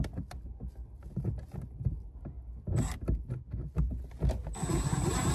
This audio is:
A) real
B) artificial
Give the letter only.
A